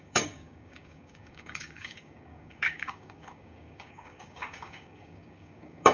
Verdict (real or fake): fake